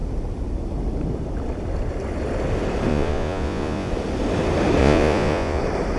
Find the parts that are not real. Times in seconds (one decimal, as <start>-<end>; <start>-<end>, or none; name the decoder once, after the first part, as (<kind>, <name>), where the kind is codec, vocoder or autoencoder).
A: 2.9-3.9 (vocoder, Vocos); 4.8-5.6